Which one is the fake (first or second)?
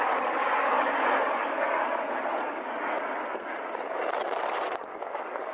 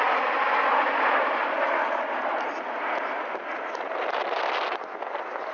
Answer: first